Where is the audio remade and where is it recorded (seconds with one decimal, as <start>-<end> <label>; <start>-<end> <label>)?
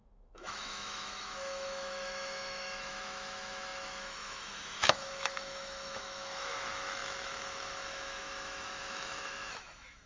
0.0-10.1 remade